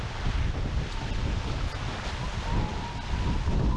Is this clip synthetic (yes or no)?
no